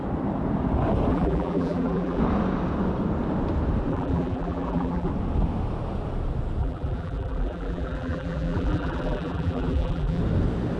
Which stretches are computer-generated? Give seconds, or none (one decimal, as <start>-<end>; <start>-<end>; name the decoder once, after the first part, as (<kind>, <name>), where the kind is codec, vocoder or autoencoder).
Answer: 1.1-2.2 (vocoder, BigVGAN v2); 3.9-5.1; 6.6-10.2